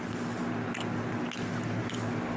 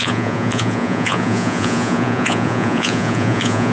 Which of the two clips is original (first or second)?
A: first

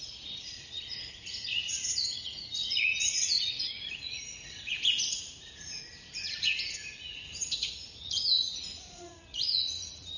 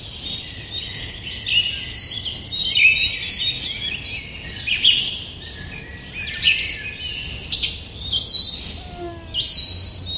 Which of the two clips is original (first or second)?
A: second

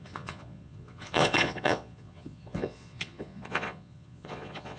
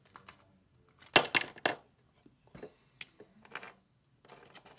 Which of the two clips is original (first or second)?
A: second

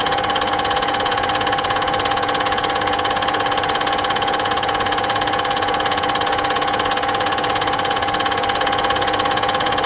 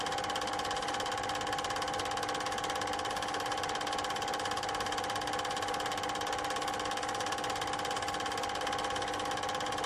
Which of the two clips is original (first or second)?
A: second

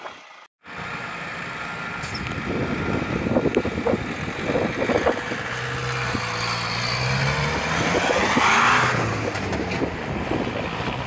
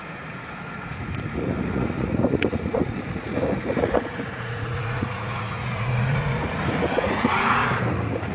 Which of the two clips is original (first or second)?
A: first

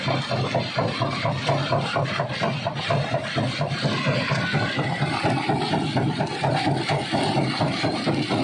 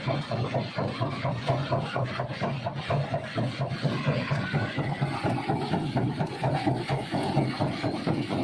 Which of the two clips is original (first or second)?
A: first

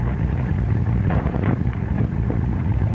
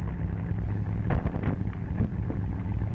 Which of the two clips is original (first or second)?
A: second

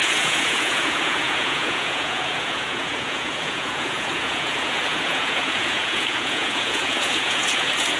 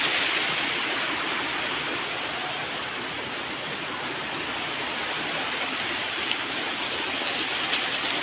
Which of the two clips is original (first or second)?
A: second